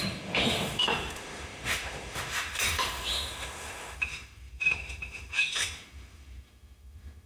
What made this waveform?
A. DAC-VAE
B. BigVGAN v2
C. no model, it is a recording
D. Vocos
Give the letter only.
A